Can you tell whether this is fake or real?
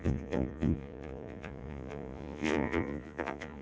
fake